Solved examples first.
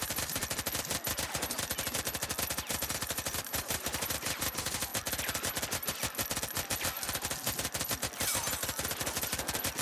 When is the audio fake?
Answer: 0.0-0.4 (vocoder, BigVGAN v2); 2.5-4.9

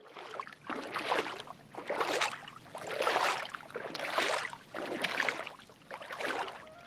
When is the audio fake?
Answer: 2.4-6.5 (vocoder, BigVGAN v2)

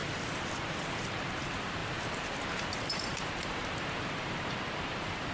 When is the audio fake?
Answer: 0.9-5.3 (vocoder, BigVGAN v2)

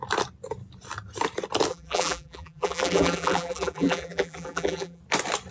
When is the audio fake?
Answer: 1.7-5.0 (vocoder, BigVGAN v2)

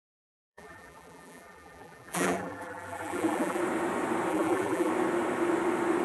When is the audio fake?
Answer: 0.0-3.6 (vocoder, BigVGAN v2); 4.3-4.9

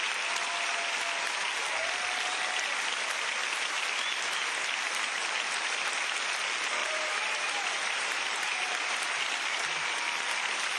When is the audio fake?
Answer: 6.8-9.0 (vocoder, BigVGAN v2)

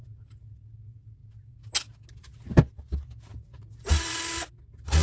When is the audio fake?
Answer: none